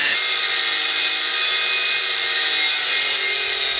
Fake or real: real